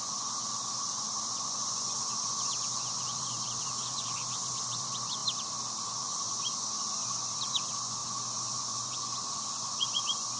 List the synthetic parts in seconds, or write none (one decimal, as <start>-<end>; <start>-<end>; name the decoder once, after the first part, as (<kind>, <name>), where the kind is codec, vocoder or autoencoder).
0.0-5.2 (vocoder, Vocos); 5.8-10.4